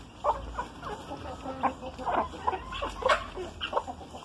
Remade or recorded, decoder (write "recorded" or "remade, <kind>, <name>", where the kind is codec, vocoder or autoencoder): recorded